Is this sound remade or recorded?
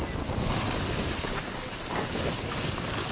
recorded